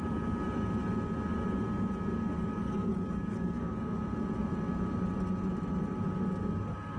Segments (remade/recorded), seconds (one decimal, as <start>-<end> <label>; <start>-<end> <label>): 0.0-2.5 recorded; 2.5-4.0 remade; 4.0-7.0 recorded